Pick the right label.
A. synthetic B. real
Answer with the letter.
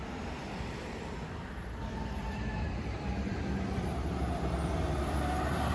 A